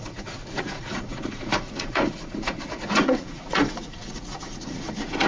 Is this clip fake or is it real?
fake